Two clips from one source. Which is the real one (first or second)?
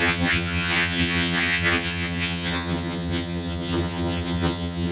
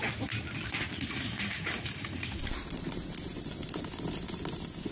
second